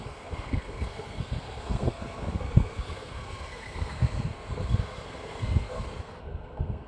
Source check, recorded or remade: remade